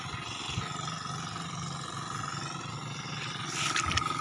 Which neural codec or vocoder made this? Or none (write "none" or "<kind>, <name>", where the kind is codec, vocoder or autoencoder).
none